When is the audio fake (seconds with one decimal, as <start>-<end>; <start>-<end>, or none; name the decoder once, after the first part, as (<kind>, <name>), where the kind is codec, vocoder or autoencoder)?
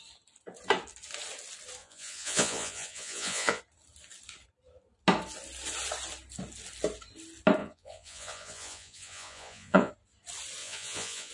1.8-3.6 (vocoder, Vocos); 7.6-9.9; 10.6-11.3